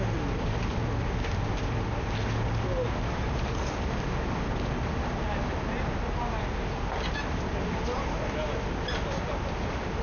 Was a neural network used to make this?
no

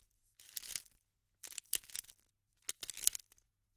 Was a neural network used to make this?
yes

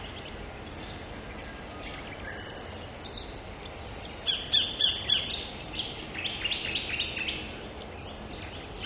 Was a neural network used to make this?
no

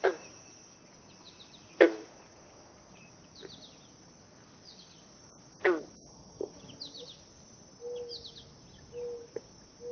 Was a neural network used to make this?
no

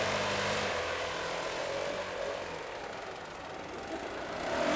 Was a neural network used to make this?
no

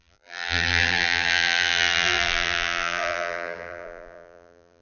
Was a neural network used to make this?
yes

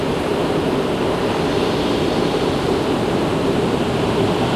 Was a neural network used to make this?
yes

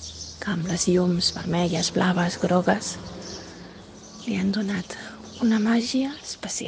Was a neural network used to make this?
no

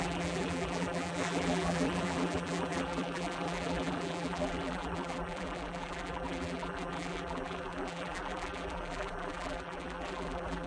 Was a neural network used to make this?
yes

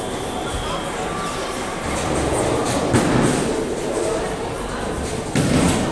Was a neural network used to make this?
no